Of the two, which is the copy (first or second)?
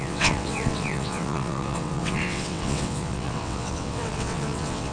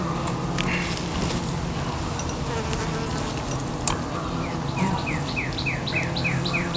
first